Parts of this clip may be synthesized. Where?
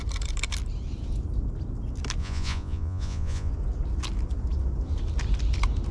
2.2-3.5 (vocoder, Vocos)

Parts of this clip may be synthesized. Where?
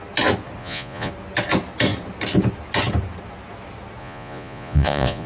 0.6-1.1 (vocoder, Vocos); 4.0-5.3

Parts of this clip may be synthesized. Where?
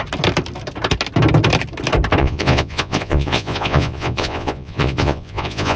2.2-5.8 (vocoder, Vocos)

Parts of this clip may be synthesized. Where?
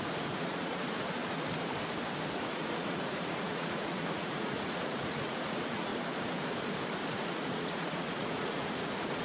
0.0-1.2 (vocoder, Vocos); 2.3-5.9; 7.1-9.2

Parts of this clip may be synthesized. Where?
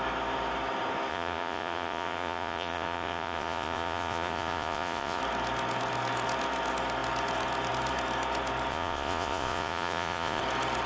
1.1-5.2 (vocoder, Vocos); 8.7-10.4